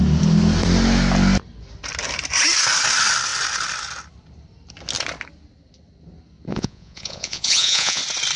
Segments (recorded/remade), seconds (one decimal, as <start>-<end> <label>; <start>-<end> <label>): 0.0-6.5 recorded; 6.5-8.0 remade; 8.0-8.4 recorded